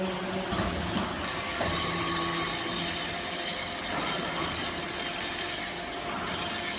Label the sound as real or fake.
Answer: real